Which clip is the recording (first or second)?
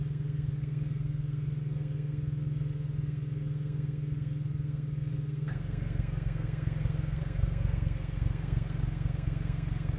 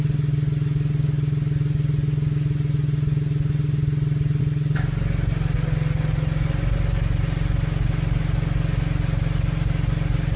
second